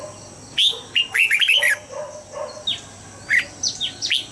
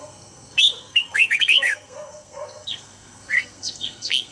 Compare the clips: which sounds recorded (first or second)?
first